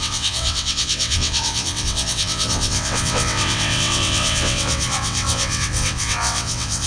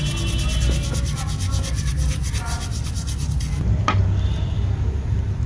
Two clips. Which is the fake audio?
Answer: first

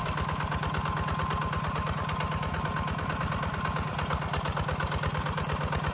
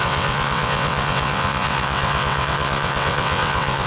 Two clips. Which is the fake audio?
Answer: second